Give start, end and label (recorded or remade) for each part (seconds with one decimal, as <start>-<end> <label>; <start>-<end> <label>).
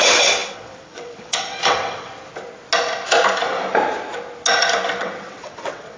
0.0-2.1 remade; 2.1-5.0 recorded; 5.0-6.0 remade